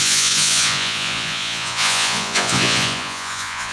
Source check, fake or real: fake